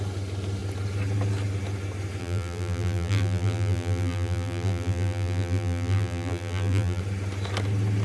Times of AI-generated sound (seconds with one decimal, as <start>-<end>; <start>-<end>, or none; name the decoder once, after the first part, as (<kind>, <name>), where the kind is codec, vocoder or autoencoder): 2.2-7.0 (vocoder, BigVGAN v2)